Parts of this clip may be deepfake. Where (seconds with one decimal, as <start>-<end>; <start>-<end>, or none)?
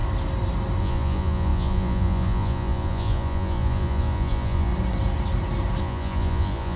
0.8-4.7; 5.8-6.8